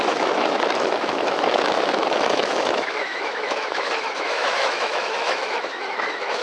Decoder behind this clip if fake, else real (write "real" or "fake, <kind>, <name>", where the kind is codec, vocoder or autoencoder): fake, autoencoder, DAC-VAE